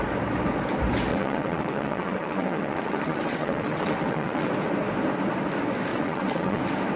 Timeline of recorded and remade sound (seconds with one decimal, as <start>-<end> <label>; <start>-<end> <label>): 0.0-1.1 recorded; 1.1-4.5 remade; 4.5-5.9 recorded; 5.9-6.6 remade; 6.6-7.0 recorded